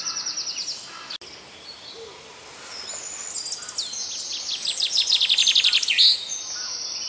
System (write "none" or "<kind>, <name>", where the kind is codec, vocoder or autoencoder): none